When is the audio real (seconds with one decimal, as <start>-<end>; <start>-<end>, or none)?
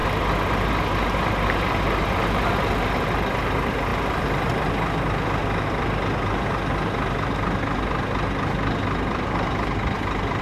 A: 0.0-10.4